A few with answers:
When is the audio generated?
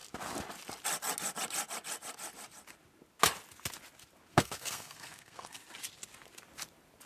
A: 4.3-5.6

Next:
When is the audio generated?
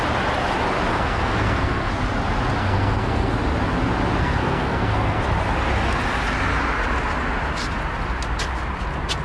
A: 0.9-1.9; 2.6-3.3; 4.2-5.2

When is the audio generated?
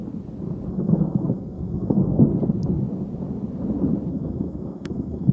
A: 0.7-2.3; 4.1-5.3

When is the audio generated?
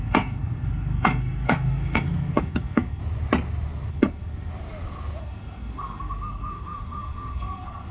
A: 0.0-3.0; 3.9-4.5; 5.2-7.9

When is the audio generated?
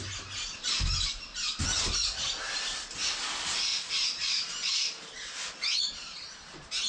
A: none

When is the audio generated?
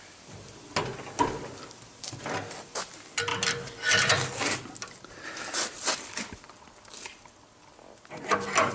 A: none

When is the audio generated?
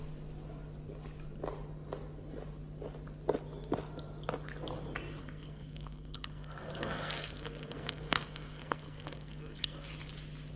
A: 5.2-9.9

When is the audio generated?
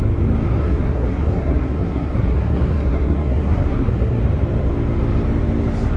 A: 0.6-4.2